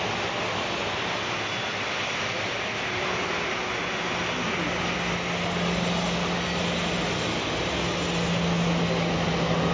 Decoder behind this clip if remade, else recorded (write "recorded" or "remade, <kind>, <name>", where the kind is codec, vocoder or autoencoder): recorded